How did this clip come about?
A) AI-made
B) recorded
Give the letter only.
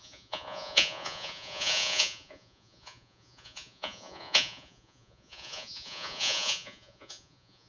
A